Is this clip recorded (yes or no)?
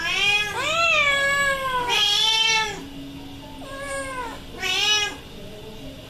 yes